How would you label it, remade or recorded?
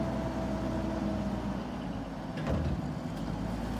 recorded